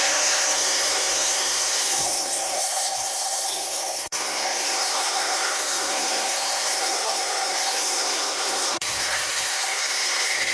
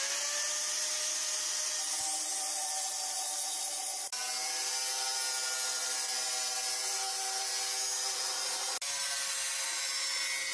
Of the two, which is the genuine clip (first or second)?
second